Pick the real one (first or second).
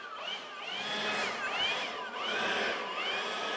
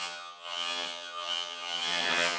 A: first